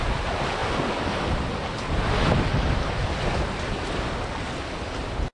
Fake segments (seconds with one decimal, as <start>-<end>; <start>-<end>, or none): none